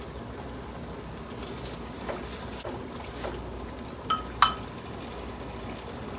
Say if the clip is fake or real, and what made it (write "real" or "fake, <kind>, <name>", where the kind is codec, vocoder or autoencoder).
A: real